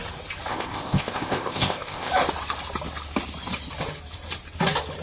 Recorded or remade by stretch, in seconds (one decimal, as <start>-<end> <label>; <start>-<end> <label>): 0.0-0.5 recorded; 0.5-2.1 remade; 2.1-5.0 recorded